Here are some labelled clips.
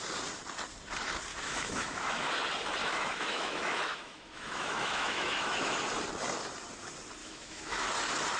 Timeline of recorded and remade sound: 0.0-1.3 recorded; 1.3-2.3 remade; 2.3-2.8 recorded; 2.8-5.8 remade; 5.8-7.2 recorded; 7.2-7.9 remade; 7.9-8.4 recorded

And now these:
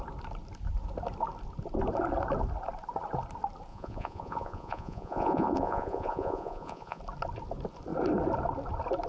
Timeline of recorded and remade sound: 0.0-3.7 recorded; 3.7-7.0 remade; 7.0-9.1 recorded